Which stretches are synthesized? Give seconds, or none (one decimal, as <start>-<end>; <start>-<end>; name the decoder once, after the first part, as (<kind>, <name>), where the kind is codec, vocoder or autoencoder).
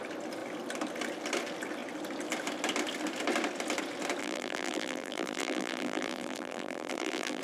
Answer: 4.2-7.4 (vocoder, BigVGAN v2)